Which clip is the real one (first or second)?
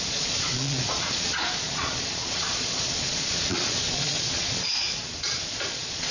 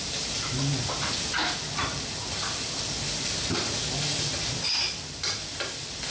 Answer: second